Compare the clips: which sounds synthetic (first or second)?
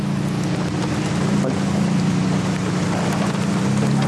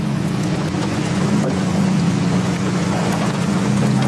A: second